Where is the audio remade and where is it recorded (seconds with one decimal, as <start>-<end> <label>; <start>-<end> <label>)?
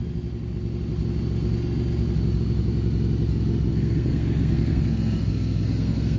0.0-3.7 recorded; 3.7-6.2 remade